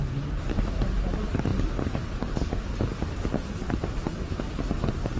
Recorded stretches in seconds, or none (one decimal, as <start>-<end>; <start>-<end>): 0.0-5.2